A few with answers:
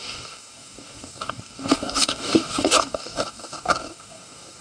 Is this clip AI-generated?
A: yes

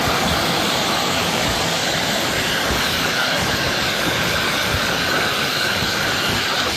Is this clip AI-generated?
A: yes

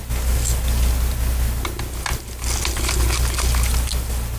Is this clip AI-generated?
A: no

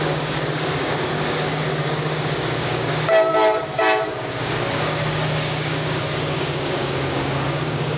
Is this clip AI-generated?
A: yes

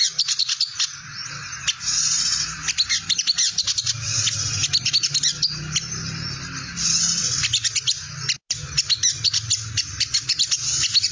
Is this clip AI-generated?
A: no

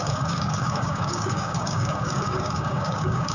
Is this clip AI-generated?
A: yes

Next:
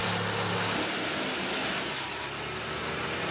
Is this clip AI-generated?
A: no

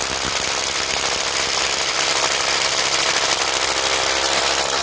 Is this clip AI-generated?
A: no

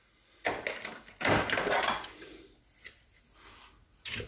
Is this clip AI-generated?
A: no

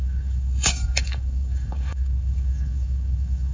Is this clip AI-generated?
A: yes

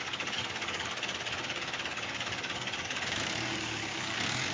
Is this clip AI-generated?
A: yes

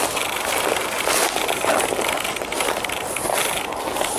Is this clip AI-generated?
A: no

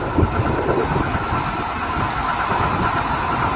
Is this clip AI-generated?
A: no